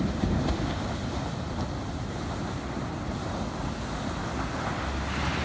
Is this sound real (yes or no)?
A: yes